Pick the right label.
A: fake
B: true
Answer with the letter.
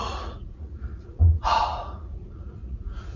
A